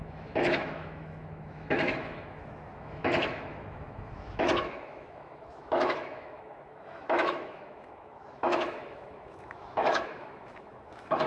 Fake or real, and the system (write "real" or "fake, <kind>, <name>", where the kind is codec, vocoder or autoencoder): fake, autoencoder, DAC-VAE